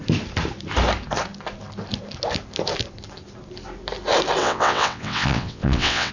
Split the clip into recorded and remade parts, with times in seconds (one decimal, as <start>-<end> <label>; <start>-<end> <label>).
0.0-4.4 recorded; 4.4-6.1 remade